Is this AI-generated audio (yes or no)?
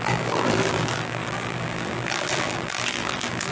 yes